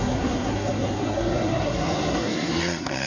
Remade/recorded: remade